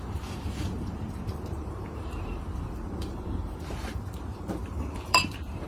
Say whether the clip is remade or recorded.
remade